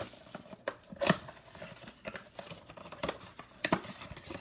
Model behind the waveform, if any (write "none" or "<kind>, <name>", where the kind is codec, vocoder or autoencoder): none